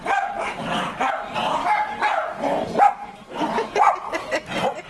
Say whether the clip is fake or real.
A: real